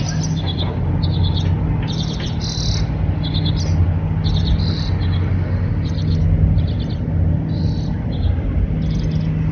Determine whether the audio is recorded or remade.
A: recorded